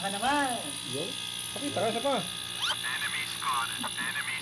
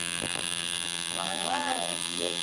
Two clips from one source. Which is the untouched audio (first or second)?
first